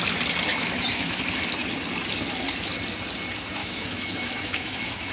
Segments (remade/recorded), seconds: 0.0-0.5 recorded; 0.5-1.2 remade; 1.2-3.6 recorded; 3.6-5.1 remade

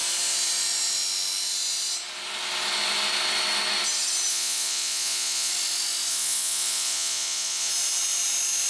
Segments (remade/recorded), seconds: 0.0-4.3 recorded; 4.3-5.5 remade; 5.5-6.1 recorded; 6.1-7.7 remade; 7.7-8.7 recorded

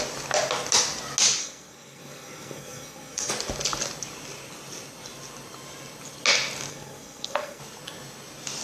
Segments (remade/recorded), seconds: 0.0-1.4 recorded; 1.4-3.3 remade; 3.3-6.7 recorded; 6.7-7.6 remade; 7.6-8.6 recorded

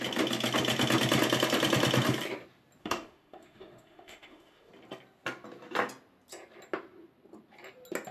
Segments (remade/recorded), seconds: 0.0-2.8 recorded; 2.8-4.7 remade; 4.7-8.1 recorded

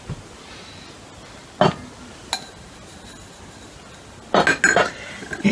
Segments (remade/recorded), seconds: 0.0-4.8 recorded; 4.8-5.5 remade

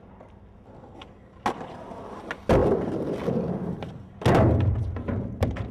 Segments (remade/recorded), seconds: 0.0-5.7 recorded

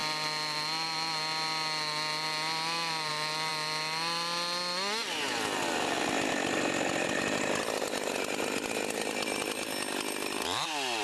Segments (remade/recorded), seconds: 0.0-11.0 recorded